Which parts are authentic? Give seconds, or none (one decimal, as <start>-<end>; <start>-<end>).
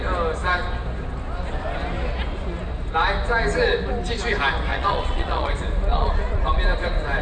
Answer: 0.0-4.7; 5.5-5.9; 6.6-7.2